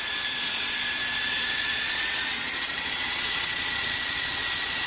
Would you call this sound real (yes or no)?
no